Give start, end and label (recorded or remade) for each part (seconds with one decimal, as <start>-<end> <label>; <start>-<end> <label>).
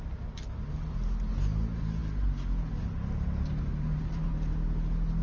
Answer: 0.0-3.7 recorded; 3.7-4.3 remade; 4.3-5.2 recorded